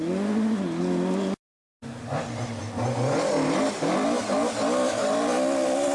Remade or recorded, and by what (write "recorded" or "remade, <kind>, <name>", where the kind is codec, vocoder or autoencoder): recorded